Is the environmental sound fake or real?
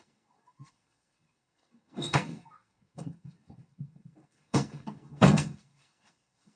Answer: fake